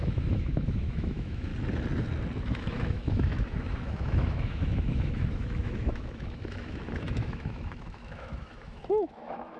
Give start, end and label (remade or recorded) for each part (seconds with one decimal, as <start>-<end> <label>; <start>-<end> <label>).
0.0-1.5 remade; 1.5-2.4 recorded; 2.4-9.6 remade